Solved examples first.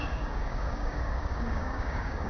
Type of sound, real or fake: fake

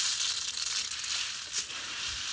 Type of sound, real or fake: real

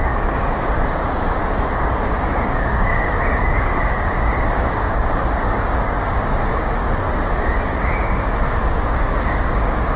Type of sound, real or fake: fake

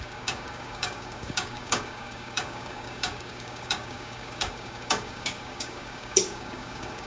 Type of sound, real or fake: fake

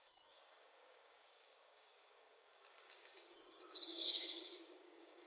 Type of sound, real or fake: fake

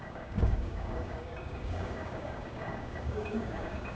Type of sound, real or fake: fake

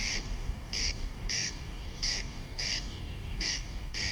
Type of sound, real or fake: fake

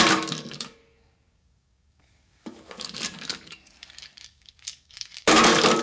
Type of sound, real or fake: fake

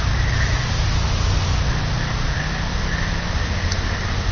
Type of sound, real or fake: real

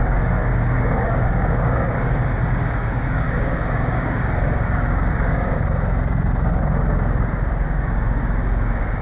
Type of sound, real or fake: fake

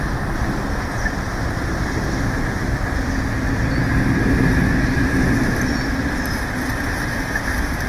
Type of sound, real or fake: real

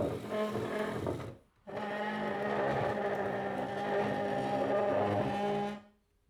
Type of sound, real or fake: real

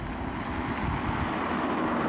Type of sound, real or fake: real